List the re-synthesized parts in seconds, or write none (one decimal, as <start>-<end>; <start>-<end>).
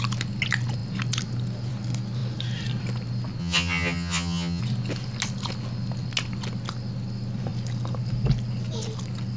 3.4-4.6